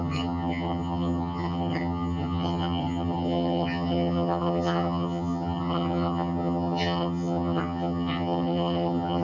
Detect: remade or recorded remade